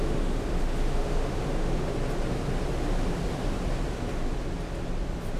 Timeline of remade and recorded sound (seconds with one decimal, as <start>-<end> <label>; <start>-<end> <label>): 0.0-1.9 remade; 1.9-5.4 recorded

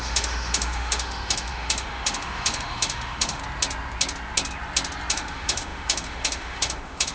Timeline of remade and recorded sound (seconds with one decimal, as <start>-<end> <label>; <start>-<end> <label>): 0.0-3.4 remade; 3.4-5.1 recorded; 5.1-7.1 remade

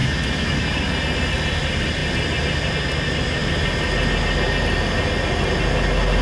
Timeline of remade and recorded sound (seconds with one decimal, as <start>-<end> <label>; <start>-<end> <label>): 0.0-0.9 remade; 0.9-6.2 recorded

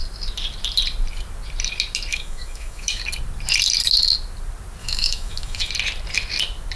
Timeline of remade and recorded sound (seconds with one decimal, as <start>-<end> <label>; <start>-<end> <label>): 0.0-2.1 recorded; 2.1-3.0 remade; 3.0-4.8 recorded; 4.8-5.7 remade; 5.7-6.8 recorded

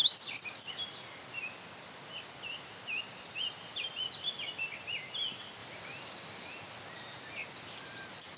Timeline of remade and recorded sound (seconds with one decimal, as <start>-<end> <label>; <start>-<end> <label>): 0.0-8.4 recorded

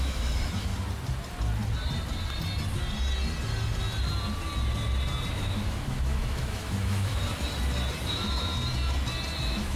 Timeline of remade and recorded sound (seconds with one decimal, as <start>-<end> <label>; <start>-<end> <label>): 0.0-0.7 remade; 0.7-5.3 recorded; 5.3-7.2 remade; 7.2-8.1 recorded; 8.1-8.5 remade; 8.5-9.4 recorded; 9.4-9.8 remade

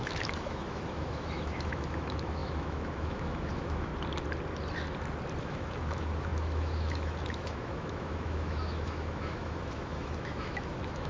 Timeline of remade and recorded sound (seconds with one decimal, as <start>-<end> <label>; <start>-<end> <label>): 0.0-3.9 remade; 3.9-5.4 recorded; 5.4-11.1 remade

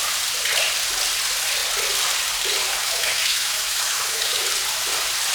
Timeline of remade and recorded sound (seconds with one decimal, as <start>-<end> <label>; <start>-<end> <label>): 0.0-2.8 recorded; 2.8-4.4 remade; 4.4-5.3 recorded